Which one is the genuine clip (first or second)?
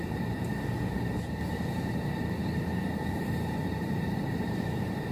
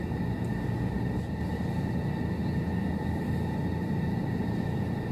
second